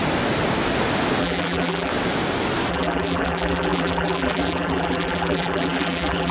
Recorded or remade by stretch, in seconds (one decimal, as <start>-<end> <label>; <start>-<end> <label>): 0.0-1.2 recorded; 1.2-1.9 remade; 1.9-2.7 recorded; 2.7-6.3 remade